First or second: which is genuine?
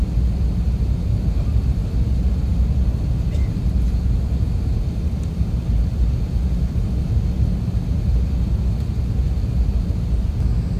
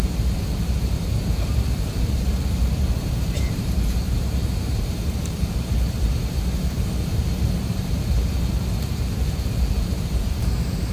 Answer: first